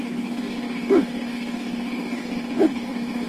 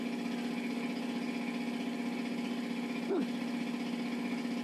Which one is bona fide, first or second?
second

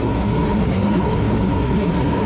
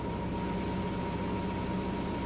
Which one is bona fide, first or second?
second